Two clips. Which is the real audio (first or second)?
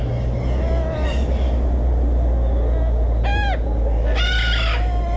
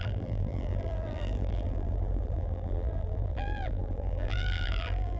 first